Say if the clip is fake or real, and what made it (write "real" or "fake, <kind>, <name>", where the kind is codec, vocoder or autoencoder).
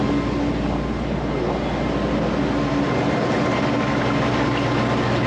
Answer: real